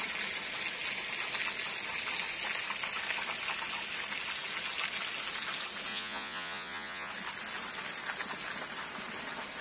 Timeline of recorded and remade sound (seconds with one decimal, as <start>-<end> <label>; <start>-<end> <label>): 0.0-5.9 recorded; 5.9-7.1 remade; 7.1-9.6 recorded